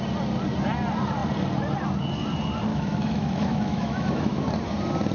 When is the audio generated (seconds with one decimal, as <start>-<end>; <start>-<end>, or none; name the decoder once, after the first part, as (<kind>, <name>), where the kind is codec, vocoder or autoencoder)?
2.7-4.4 (autoencoder, DAC-VAE)